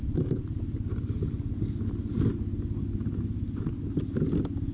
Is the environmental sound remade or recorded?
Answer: recorded